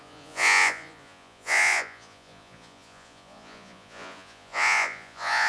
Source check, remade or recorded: remade